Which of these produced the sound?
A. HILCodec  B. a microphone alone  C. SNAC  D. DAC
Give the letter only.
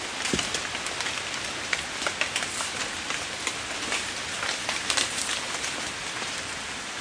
B